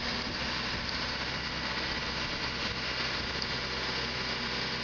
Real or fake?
real